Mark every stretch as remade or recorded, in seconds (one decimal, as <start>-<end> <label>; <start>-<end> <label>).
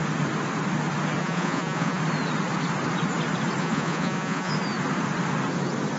0.0-1.2 recorded; 1.2-2.0 remade; 2.0-3.6 recorded; 3.6-4.5 remade; 4.5-6.0 recorded